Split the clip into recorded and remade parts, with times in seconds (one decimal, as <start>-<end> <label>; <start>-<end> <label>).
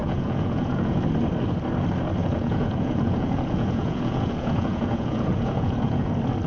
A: 0.0-1.0 remade; 1.0-2.2 recorded; 2.2-6.1 remade; 6.1-6.5 recorded